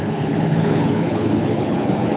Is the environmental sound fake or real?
fake